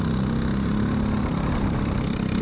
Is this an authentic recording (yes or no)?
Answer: yes